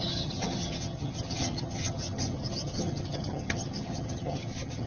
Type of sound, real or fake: fake